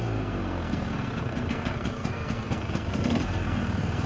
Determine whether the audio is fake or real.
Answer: fake